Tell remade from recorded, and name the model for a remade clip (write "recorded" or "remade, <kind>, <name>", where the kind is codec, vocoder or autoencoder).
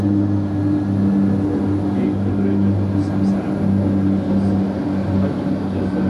recorded